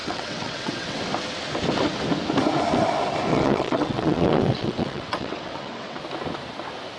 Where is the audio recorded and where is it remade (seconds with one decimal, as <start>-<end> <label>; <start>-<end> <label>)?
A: 0.0-1.0 remade; 1.0-3.3 recorded; 3.3-6.0 remade; 6.0-7.0 recorded